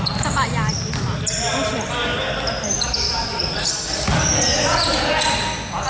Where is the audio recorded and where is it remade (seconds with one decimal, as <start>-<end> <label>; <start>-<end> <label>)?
0.0-3.2 recorded; 3.2-3.7 remade; 3.7-4.5 recorded; 4.5-5.0 remade; 5.0-5.9 recorded